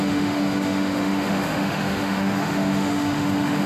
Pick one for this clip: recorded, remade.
remade